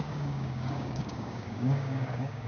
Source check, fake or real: fake